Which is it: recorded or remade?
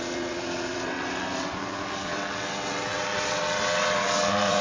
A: remade